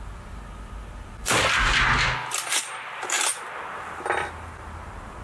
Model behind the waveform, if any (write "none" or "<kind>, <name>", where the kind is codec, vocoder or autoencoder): none